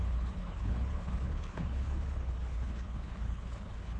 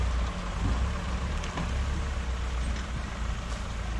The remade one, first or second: first